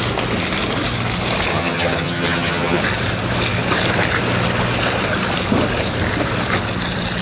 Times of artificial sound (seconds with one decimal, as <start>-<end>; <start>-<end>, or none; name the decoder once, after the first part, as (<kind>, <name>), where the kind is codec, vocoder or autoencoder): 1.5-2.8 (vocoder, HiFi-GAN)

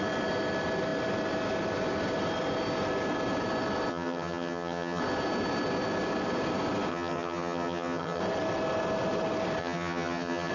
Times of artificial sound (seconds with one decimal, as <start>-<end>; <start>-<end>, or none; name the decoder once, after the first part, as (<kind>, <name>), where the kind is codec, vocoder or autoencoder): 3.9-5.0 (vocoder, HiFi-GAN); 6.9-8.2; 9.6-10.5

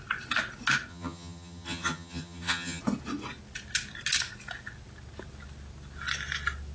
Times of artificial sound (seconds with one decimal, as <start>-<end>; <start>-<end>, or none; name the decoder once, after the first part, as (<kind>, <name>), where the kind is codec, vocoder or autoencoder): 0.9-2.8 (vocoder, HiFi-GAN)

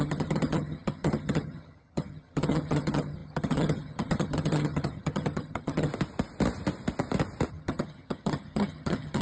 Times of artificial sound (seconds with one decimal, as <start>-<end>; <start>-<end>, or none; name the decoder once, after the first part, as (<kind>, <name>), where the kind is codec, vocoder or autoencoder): 0.0-5.9 (vocoder, HiFi-GAN); 7.5-9.2

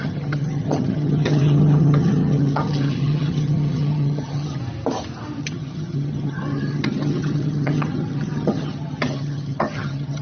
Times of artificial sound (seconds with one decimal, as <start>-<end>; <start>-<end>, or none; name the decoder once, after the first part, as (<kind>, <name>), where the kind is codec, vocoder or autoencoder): 0.0-4.6 (vocoder, HiFi-GAN); 5.4-10.2